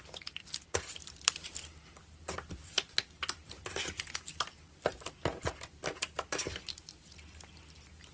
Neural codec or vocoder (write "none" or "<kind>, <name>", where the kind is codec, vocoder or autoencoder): none